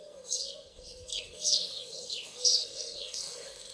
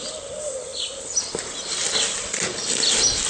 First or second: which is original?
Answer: second